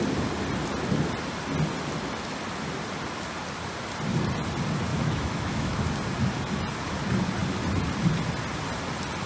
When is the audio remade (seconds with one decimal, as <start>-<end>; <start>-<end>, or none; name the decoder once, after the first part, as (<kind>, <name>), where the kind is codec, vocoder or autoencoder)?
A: 4.9-5.8 (autoencoder, DAC-VAE)